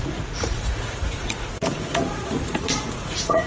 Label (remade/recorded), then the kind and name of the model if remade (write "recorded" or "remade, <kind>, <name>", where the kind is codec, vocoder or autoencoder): remade, vocoder, Vocos